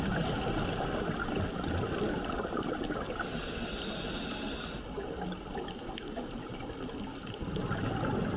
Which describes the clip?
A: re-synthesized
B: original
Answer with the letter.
B